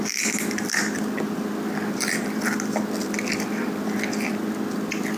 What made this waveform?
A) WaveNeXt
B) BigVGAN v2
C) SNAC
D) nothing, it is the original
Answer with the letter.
D